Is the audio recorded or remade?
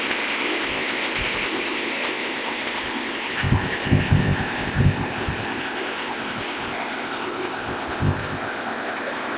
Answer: remade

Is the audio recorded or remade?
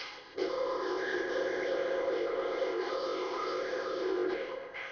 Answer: remade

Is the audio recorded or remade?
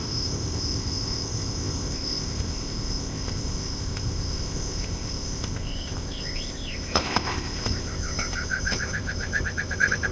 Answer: remade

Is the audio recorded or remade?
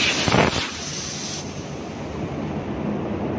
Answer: recorded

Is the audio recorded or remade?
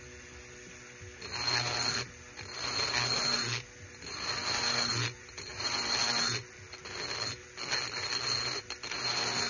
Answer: recorded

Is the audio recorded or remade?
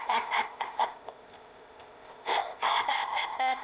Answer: remade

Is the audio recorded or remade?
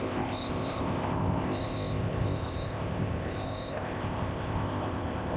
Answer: remade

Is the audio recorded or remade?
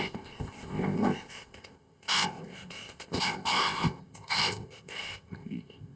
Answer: remade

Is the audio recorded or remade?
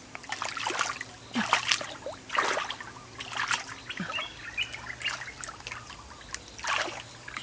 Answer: recorded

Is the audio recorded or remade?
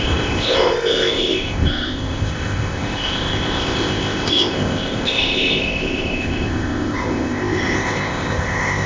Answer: remade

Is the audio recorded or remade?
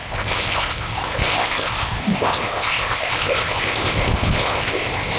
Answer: remade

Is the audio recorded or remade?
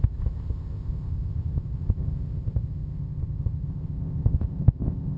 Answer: remade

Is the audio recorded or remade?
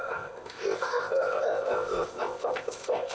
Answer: remade